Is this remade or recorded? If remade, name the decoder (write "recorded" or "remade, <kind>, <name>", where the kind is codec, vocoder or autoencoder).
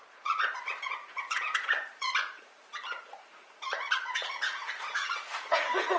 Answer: remade, vocoder, Vocos